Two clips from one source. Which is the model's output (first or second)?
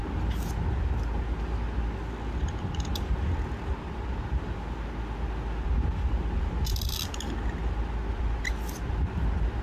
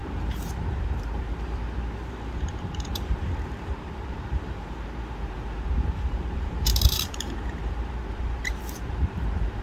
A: second